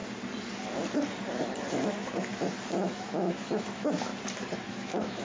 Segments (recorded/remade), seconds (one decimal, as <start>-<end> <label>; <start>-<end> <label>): 0.0-1.7 recorded; 1.7-2.3 remade; 2.3-2.9 recorded; 2.9-4.1 remade; 4.1-4.7 recorded; 4.7-5.2 remade